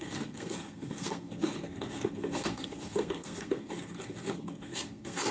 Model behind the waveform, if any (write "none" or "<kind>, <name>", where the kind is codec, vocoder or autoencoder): codec, SNAC